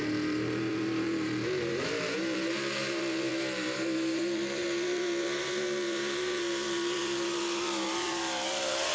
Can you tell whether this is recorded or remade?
remade